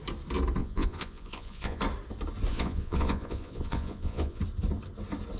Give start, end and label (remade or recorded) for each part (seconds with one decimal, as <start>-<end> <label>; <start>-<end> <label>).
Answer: 0.0-0.6 recorded; 0.6-1.8 remade; 1.8-2.5 recorded; 2.5-4.4 remade; 4.4-5.4 recorded